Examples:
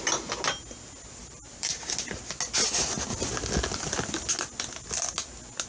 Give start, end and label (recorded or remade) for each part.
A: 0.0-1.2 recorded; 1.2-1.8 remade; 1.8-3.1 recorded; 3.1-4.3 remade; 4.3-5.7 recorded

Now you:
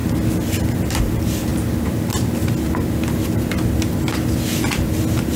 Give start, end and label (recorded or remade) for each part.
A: 0.0-1.0 recorded; 1.0-1.5 remade; 1.5-4.7 recorded; 4.7-5.4 remade

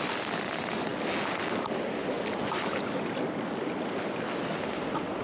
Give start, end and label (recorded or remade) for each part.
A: 0.0-5.2 recorded

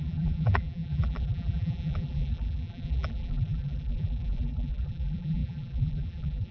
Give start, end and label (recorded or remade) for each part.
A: 0.0-6.5 remade

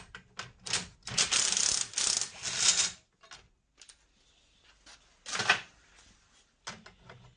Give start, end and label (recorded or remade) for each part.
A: 0.0-7.4 recorded

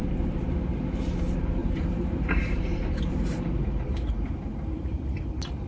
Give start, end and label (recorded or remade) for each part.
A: 0.0-1.6 recorded; 1.6-5.0 remade; 5.0-5.7 recorded